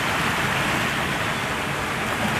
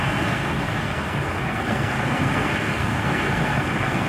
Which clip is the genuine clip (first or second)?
first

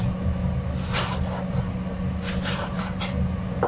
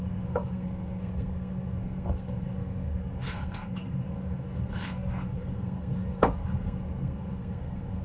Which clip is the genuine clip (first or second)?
first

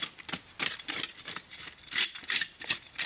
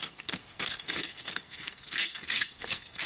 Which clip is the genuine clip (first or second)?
first